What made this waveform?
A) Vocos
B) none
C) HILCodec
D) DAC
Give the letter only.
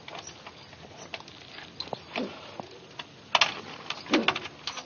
B